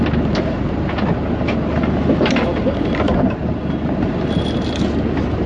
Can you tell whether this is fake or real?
real